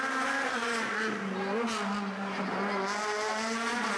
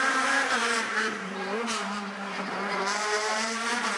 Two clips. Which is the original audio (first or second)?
first